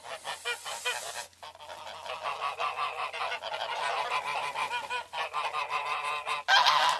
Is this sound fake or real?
real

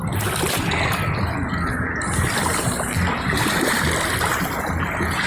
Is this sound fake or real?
real